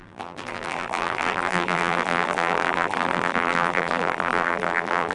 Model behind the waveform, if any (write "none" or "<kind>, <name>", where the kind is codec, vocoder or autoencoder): vocoder, BigVGAN v2